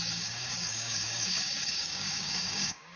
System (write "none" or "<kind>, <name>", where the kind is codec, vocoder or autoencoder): codec, DAC